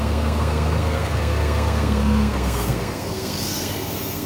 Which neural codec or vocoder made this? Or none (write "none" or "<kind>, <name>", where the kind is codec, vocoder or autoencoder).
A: codec, SNAC